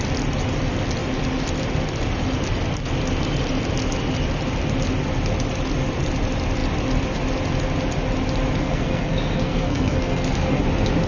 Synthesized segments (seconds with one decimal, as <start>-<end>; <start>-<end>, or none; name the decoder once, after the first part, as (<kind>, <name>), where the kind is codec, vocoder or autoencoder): 8.6-10.6 (codec, SNAC)